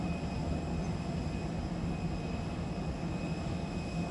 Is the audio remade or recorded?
recorded